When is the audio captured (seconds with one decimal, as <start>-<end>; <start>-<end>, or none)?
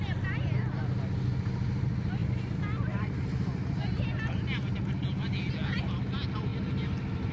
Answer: 0.0-7.3